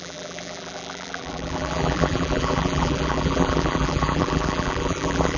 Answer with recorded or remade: remade